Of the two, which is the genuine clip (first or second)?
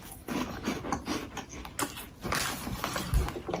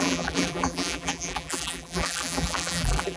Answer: first